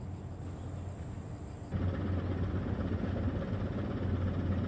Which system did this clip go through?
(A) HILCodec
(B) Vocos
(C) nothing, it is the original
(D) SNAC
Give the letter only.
C